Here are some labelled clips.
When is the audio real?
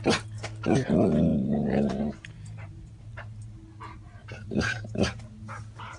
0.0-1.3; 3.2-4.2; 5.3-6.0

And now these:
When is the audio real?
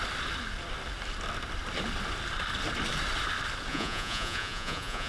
0.0-3.7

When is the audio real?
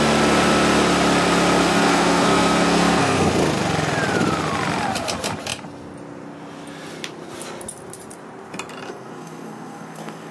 0.0-1.7; 3.3-8.9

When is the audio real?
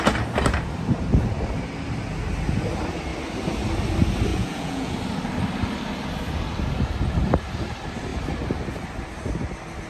0.0-4.3; 4.9-9.9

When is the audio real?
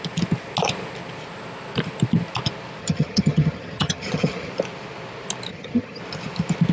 0.0-2.8; 4.5-5.5; 6.0-6.7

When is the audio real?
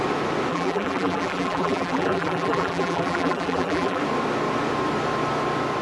0.0-0.5; 4.0-5.8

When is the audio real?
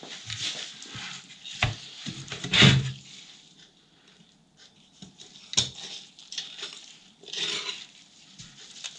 0.0-9.0